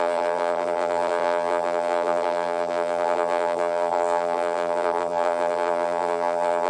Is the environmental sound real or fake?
fake